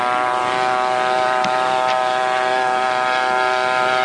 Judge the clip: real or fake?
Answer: real